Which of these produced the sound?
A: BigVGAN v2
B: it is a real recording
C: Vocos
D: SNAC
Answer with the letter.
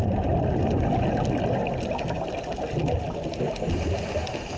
B